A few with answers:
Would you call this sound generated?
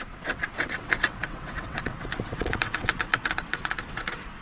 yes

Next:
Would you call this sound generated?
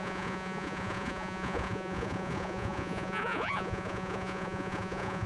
yes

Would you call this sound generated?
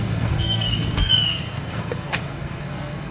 yes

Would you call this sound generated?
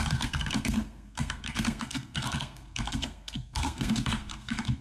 yes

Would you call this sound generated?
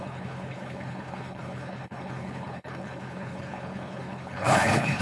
yes